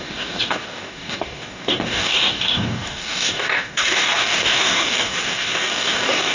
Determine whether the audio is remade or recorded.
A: remade